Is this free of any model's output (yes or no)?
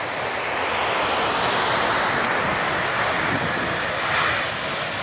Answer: yes